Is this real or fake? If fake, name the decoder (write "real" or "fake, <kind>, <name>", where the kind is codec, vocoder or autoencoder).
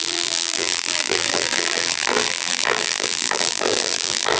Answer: fake, vocoder, BigVGAN v2